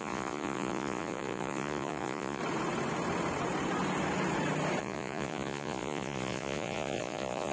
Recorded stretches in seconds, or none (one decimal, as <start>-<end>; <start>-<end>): 2.4-4.8

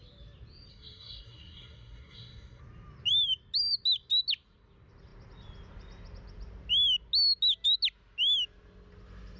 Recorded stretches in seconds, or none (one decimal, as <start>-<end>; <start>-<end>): 0.0-0.7; 2.6-9.4

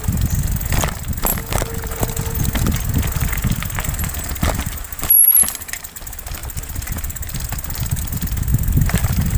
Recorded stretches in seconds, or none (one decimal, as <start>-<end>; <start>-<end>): 0.0-8.5

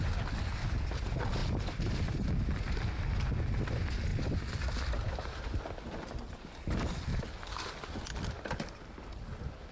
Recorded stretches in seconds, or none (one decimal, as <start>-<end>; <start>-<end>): 0.0-4.1; 5.6-9.7